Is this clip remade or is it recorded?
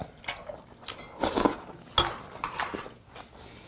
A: recorded